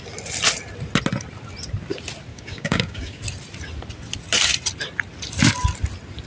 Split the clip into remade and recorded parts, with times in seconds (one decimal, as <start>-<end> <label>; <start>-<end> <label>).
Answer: 0.0-2.3 recorded; 2.3-3.2 remade; 3.2-6.3 recorded